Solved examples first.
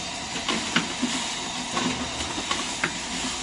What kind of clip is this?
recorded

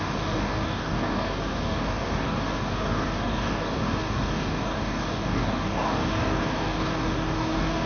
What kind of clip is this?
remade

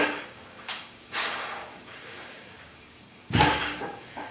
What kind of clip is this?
remade